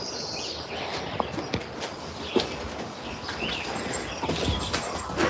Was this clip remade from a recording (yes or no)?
no